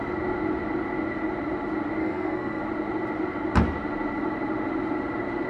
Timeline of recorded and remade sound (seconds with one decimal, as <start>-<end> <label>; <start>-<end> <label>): 0.0-2.0 recorded; 2.0-2.6 remade; 2.6-5.5 recorded